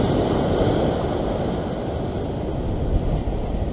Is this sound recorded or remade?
recorded